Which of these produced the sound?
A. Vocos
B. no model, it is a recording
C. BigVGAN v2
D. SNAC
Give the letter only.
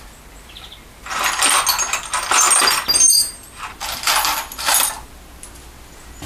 B